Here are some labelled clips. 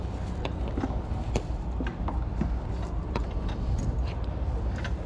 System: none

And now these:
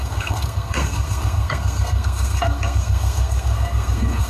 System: codec, SNAC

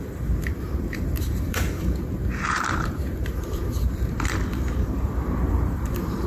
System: vocoder, BigVGAN v2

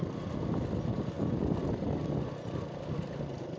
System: none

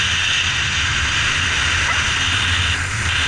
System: none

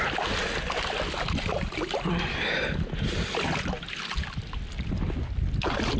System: none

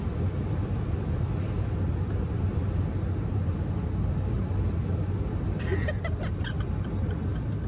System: none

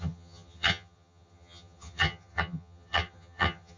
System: vocoder, HiFi-GAN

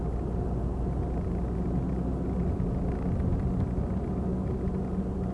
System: none